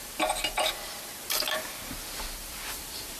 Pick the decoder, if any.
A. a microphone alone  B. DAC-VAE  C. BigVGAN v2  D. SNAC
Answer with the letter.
A